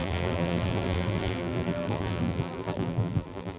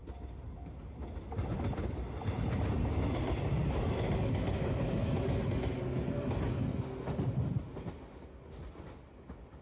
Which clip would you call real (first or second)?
second